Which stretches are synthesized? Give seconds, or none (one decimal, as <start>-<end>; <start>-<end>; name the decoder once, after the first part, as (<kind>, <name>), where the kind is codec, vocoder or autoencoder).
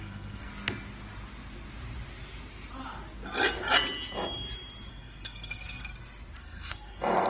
0.0-0.5 (codec, SNAC); 4.9-5.9; 6.4-7.3